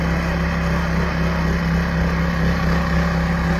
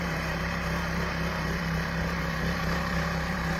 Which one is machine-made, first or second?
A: second